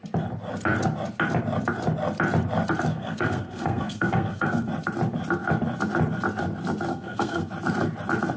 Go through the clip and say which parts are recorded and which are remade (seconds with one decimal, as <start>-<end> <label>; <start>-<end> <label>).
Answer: 0.0-2.9 recorded; 2.9-4.7 remade; 4.7-6.9 recorded; 6.9-7.5 remade; 7.5-8.4 recorded

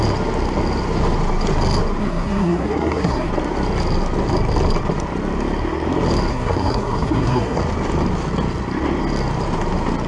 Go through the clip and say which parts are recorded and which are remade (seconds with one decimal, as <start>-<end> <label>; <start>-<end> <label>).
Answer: 0.0-2.0 recorded; 2.0-3.3 remade; 3.3-6.3 recorded; 6.3-7.6 remade; 7.6-10.1 recorded